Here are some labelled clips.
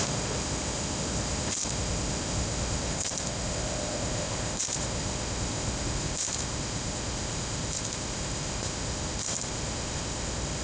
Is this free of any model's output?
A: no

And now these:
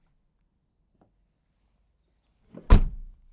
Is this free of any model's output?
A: yes